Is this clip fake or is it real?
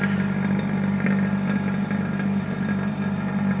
real